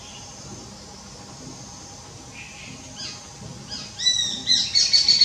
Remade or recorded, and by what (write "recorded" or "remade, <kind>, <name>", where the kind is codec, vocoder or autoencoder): recorded